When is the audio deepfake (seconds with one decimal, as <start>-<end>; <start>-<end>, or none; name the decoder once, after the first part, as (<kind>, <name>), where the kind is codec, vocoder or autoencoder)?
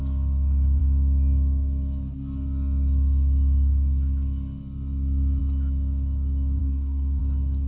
6.6-7.2 (codec, SNAC)